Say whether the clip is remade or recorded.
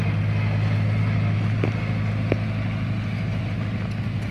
recorded